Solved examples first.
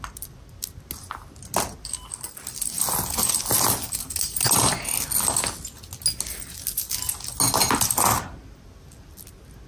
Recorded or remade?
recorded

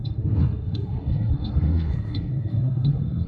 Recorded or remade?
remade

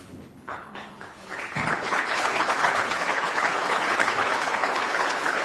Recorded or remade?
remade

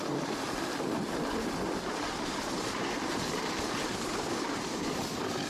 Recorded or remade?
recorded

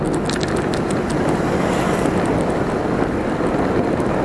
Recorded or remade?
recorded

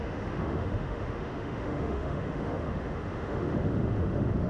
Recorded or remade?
remade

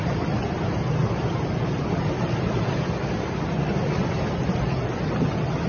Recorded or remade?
recorded